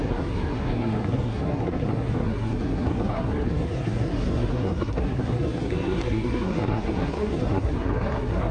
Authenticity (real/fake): fake